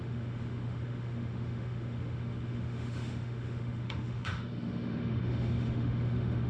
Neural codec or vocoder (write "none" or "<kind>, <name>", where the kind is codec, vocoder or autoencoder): autoencoder, DAC-VAE